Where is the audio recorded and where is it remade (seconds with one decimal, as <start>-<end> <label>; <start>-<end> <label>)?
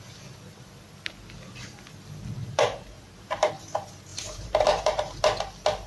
0.0-2.4 recorded; 2.4-3.5 remade; 3.5-4.1 recorded; 4.1-5.2 remade; 5.2-5.9 recorded